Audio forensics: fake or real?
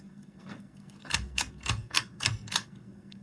fake